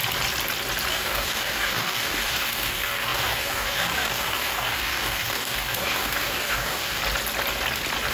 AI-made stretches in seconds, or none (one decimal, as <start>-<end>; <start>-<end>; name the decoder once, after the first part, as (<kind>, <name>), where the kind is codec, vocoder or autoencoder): 0.9-7.0 (codec, DAC)